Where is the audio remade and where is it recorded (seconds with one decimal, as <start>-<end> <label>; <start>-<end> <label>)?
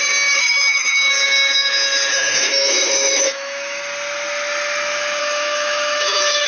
0.0-0.4 recorded; 0.4-1.1 remade; 1.1-2.1 recorded; 2.1-3.8 remade; 3.8-5.2 recorded; 5.2-6.5 remade